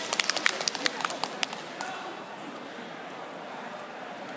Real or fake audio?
real